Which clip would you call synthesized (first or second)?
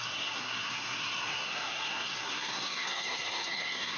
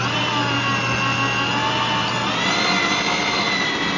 first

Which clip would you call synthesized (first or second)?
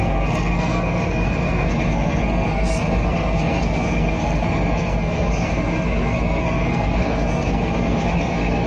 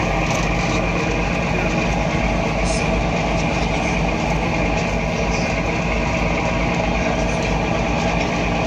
first